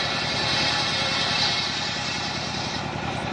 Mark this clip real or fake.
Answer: fake